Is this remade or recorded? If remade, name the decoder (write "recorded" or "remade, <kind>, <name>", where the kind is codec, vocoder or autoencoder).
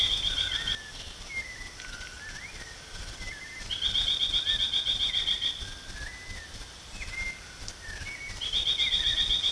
recorded